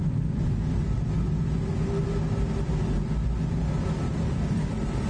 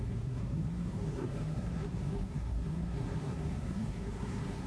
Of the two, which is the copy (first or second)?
second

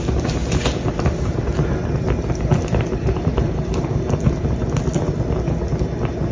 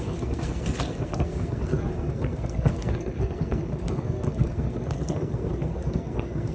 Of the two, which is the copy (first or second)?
second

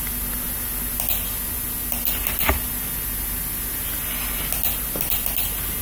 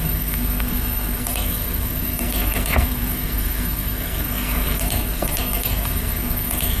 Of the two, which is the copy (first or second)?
second